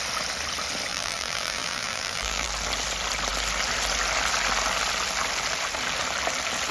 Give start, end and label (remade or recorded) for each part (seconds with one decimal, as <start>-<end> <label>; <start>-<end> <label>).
0.0-0.9 recorded; 0.9-2.5 remade; 2.5-6.7 recorded